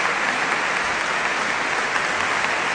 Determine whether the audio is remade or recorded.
recorded